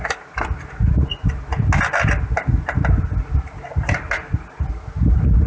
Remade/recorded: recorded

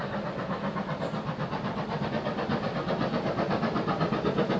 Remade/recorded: recorded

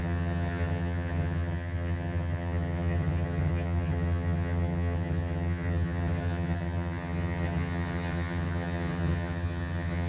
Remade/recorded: remade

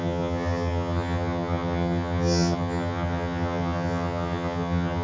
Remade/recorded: remade